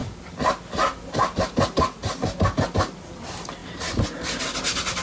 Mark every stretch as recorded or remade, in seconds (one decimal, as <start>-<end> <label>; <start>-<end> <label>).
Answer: 0.0-5.0 recorded